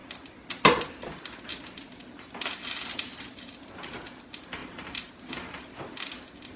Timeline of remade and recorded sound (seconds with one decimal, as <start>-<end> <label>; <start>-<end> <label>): 0.0-4.6 recorded; 4.6-5.5 remade; 5.5-6.6 recorded